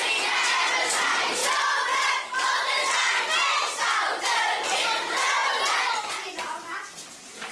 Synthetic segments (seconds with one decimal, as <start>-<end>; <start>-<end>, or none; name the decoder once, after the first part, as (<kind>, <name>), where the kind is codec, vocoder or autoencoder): none